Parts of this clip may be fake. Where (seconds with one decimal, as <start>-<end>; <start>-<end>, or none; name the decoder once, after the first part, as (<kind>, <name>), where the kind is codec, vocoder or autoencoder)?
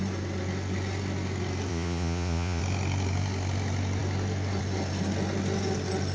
1.7-2.6 (vocoder, Vocos)